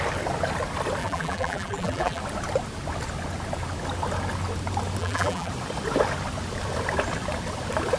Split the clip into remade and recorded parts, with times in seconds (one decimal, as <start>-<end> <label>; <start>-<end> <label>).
0.0-1.0 recorded; 1.0-2.2 remade; 2.2-5.0 recorded; 5.0-5.5 remade; 5.5-8.0 recorded